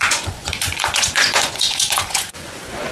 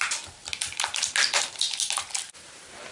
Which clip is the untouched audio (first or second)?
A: second